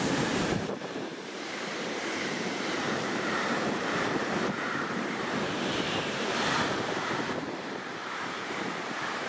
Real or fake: fake